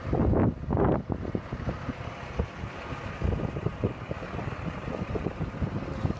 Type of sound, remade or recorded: recorded